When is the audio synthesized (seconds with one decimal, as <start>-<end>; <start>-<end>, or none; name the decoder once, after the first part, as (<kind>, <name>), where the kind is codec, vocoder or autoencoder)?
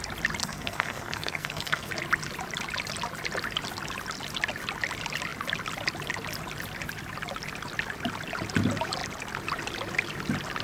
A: 0.4-1.9 (codec, SNAC)